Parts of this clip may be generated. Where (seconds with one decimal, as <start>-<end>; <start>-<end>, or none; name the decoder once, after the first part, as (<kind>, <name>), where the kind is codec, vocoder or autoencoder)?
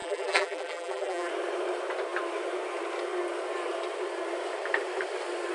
0.0-1.3 (vocoder, BigVGAN v2)